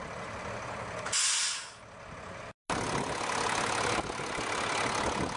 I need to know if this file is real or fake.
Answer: real